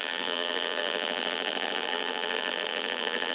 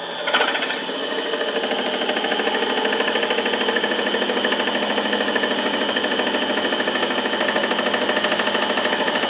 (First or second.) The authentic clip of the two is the second